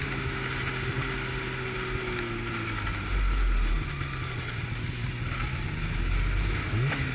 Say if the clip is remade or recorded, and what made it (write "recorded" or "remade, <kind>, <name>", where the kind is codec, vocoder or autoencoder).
recorded